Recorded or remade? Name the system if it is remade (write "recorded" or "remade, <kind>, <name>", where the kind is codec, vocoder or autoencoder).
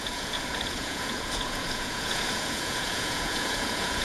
remade, vocoder, Vocos